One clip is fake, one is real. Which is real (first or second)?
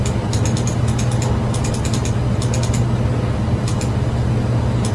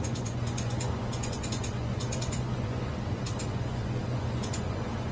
first